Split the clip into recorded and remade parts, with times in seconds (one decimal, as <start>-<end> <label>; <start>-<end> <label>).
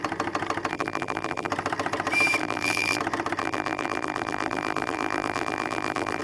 0.0-0.7 recorded; 0.7-1.5 remade; 1.5-2.4 recorded; 2.4-3.0 remade; 3.0-3.4 recorded; 3.4-6.2 remade